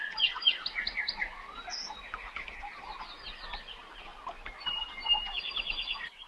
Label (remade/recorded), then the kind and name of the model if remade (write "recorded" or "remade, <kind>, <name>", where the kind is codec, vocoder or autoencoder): recorded